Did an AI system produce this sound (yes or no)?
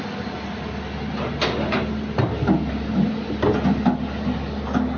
no